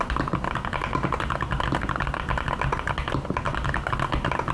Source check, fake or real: real